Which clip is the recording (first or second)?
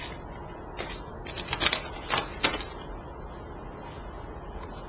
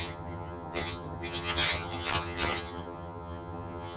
first